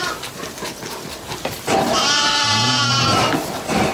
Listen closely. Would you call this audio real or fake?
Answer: real